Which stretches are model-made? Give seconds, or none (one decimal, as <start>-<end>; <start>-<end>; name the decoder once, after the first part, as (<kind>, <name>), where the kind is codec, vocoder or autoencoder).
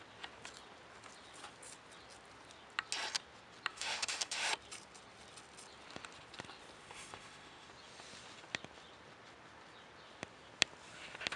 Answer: 3.7-4.5 (autoencoder, DAC-VAE); 6.8-7.7